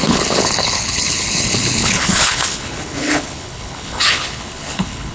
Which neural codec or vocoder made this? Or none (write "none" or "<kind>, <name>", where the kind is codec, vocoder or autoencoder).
codec, HILCodec